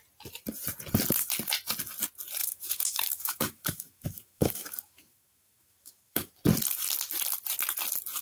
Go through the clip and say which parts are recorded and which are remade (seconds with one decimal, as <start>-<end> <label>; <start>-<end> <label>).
0.0-2.4 recorded; 2.4-6.3 remade; 6.3-8.2 recorded